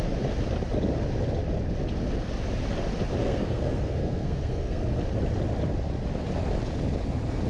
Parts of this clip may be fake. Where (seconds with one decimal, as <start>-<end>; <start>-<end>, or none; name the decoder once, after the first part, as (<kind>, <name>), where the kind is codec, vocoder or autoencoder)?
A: 3.2-5.0 (codec, SNAC)